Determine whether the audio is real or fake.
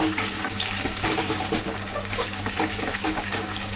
fake